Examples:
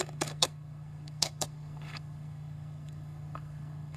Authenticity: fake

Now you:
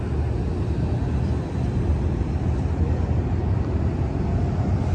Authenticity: real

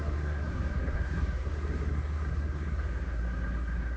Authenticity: fake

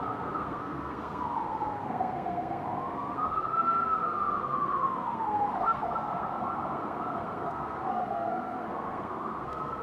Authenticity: fake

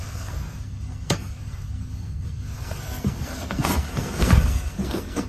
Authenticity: fake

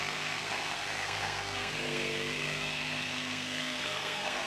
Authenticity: fake